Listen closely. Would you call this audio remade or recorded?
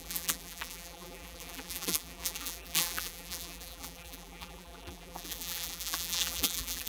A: remade